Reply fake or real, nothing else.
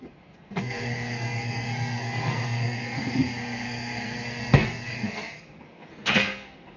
fake